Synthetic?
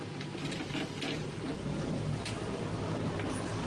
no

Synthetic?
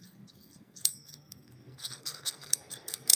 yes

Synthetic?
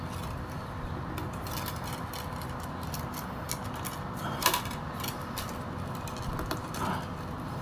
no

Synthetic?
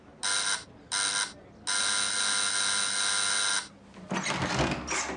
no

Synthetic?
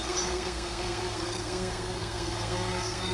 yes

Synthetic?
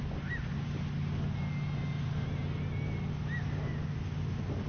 no